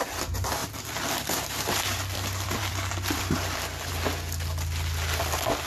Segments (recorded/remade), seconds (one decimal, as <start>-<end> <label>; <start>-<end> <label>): 0.0-0.6 recorded; 0.6-3.9 remade; 3.9-5.7 recorded